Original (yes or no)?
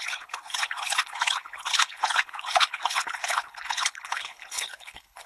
no